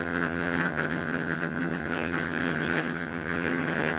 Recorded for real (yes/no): no